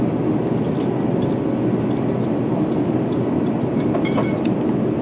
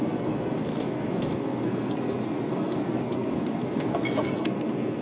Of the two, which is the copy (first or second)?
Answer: second